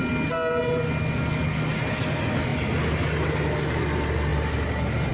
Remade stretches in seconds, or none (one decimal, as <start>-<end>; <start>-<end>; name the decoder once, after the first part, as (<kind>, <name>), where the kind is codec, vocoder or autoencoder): none